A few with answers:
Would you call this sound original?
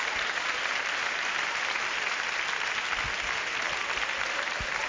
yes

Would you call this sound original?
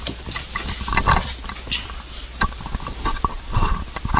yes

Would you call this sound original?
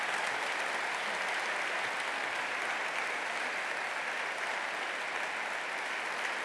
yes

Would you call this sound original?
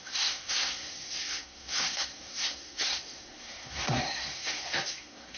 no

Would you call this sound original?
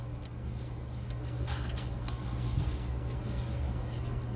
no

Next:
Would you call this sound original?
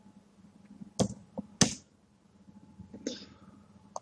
yes